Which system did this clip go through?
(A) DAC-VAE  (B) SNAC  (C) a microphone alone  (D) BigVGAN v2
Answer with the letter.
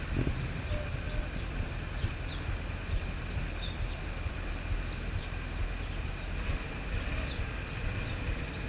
C